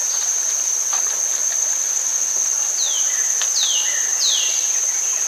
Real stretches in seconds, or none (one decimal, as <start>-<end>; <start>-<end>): 1.2-5.3